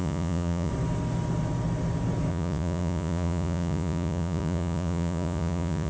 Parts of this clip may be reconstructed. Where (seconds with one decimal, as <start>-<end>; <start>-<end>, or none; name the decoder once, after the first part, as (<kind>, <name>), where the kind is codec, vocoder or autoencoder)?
0.0-0.7 (vocoder, Vocos); 2.3-5.9